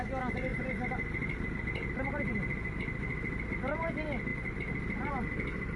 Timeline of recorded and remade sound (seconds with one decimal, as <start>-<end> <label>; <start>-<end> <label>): 0.0-5.8 recorded